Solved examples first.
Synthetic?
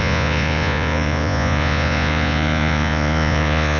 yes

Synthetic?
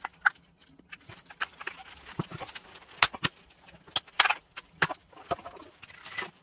no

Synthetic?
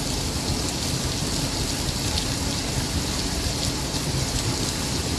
no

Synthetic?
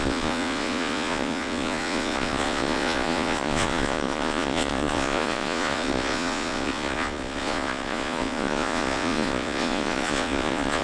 yes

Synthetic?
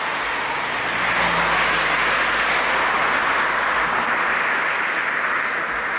no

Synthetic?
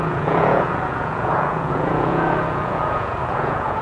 yes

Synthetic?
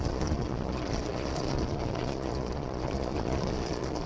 yes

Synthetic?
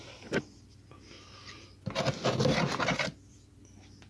no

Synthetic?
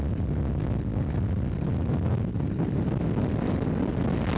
no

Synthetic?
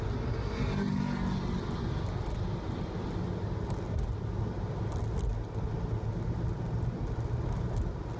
no